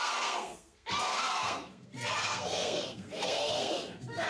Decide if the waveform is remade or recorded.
remade